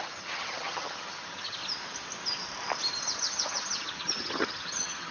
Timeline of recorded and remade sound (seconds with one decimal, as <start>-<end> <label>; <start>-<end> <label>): 0.0-1.6 remade; 1.6-3.2 recorded; 3.2-5.1 remade